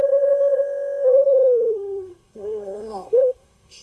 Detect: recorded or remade remade